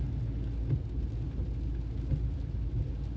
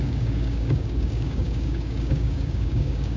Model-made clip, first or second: second